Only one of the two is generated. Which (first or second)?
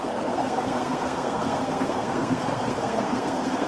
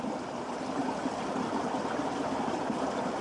first